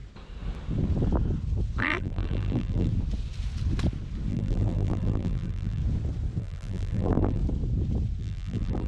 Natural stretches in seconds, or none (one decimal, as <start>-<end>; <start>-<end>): 0.0-1.8; 2.9-4.3; 5.8-6.4; 7.4-8.2